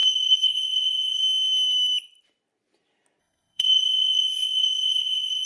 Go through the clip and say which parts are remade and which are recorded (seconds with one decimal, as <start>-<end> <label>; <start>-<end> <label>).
0.0-1.2 remade; 1.2-3.2 recorded; 3.2-5.5 remade